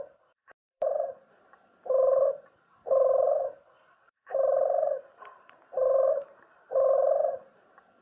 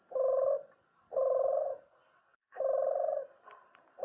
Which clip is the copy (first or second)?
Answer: first